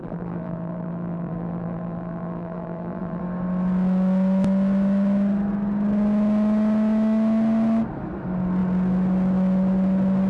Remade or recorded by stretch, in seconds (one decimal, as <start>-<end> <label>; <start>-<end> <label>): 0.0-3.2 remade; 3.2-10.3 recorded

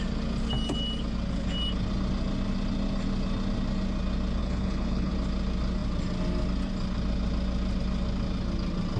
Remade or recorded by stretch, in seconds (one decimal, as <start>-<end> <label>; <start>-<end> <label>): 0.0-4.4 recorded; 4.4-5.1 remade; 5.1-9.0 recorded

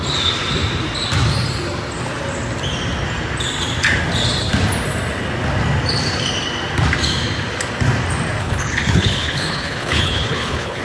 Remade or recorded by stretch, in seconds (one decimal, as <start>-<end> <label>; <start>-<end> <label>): 0.0-8.4 recorded; 8.4-10.8 remade

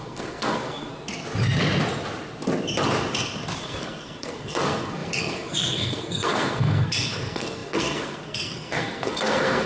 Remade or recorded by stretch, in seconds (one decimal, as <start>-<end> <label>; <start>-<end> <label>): 0.0-0.9 remade; 0.9-3.6 recorded; 3.6-9.7 remade

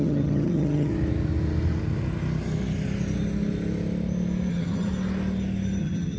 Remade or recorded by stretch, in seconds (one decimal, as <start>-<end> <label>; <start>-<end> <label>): 0.0-0.9 remade; 0.9-4.5 recorded; 4.5-4.9 remade; 4.9-5.8 recorded; 5.8-6.2 remade

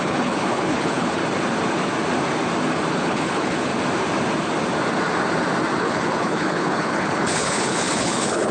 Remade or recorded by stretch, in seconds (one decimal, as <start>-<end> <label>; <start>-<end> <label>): 0.0-1.2 remade; 1.2-2.9 recorded; 2.9-3.7 remade; 3.7-5.8 recorded; 5.8-8.5 remade

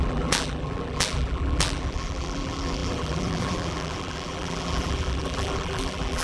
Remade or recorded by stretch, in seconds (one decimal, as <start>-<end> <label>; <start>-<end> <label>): 0.0-6.2 remade